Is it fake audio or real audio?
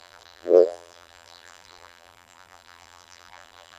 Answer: fake